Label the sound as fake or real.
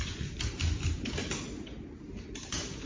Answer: real